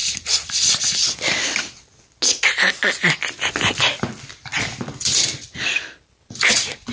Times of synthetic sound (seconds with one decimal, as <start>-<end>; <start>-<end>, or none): 0.0-1.4